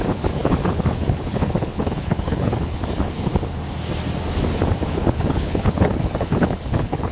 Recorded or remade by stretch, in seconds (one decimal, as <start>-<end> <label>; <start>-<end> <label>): 0.0-3.3 remade; 3.3-4.8 recorded; 4.8-7.1 remade